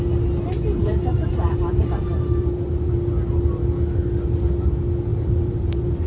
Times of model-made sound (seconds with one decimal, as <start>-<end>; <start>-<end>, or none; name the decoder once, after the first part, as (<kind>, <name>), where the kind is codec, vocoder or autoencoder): 0.8-2.9 (vocoder, BigVGAN v2); 5.1-6.1